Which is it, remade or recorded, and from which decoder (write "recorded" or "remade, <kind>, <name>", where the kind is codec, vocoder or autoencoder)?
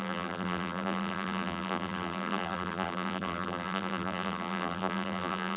remade, vocoder, BigVGAN v2